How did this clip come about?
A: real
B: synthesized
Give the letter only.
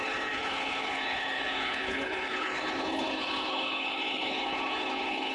B